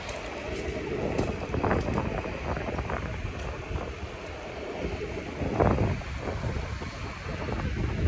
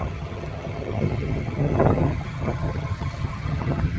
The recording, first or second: first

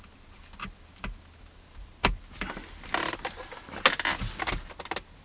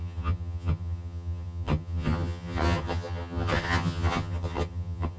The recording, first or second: first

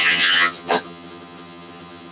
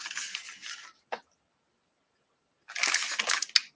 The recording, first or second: second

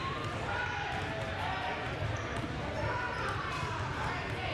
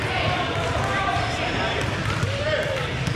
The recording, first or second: first